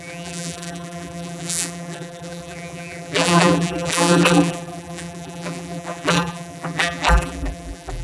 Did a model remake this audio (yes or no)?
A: yes